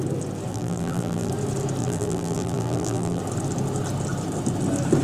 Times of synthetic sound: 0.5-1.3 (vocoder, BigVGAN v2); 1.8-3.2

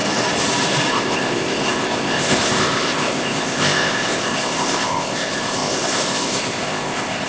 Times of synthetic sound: 0.9-7.3 (codec, ZipCodec)

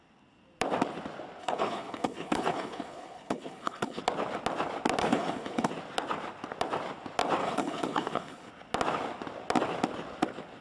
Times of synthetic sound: 1.4-4.0 (codec, HILCodec); 5.0-5.7; 7.4-8.5

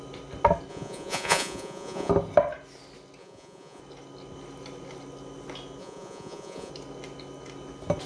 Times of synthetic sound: 0.7-2.1 (vocoder, Vocos); 3.2-3.8; 5.8-6.7

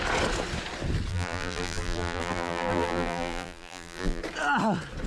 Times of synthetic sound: 1.1-4.2 (vocoder, BigVGAN v2)

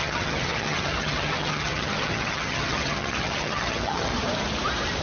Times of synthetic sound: 0.0-4.1 (vocoder, HiFi-GAN)

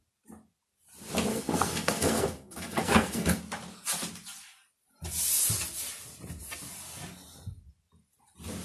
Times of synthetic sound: 1.3-3.4 (codec, SNAC)